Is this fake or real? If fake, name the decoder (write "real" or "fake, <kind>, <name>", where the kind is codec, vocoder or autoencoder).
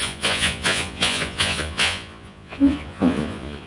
fake, vocoder, Vocos